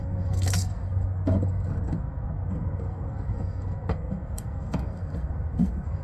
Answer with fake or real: fake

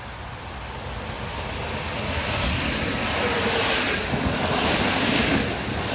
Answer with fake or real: real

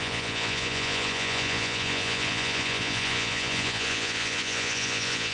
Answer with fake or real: fake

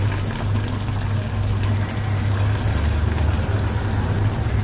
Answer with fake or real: real